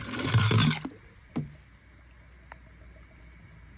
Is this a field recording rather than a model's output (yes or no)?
yes